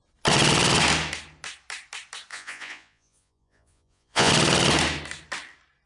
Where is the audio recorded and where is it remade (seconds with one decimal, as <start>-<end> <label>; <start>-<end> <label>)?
0.0-2.3 recorded; 2.3-4.3 remade; 4.3-5.9 recorded